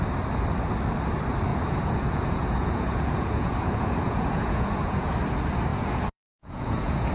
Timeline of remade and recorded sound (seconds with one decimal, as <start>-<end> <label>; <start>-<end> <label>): 0.0-1.5 recorded; 1.5-5.1 remade; 5.1-5.7 recorded; 5.7-7.1 remade